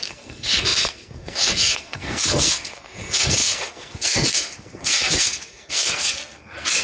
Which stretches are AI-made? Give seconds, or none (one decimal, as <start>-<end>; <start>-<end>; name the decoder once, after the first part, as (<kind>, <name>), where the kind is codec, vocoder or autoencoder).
0.0-6.8 (codec, SNAC)